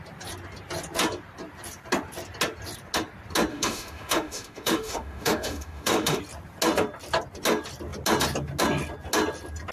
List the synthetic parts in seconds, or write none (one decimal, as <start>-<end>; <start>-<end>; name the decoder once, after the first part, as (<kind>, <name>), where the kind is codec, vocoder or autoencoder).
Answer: 3.5-6.2 (autoencoder, DAC-VAE)